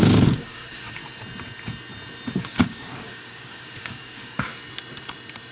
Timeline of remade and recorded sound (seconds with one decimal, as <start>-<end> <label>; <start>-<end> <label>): 0.0-1.0 remade; 1.0-2.4 recorded; 2.4-4.5 remade; 4.5-5.5 recorded